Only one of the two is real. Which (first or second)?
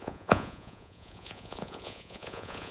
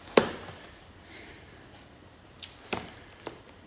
second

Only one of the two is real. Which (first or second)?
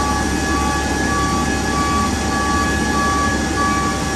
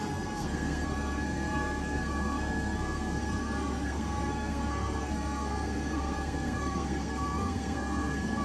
first